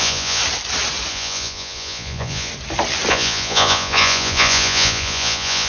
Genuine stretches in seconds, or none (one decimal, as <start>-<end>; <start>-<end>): 0.4-1.1; 2.5-3.1